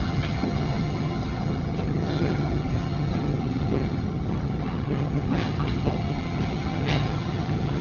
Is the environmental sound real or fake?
fake